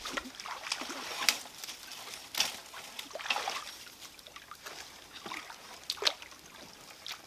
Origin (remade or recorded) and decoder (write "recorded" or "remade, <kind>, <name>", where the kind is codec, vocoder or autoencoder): recorded